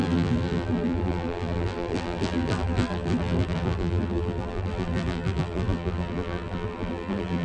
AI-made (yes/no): yes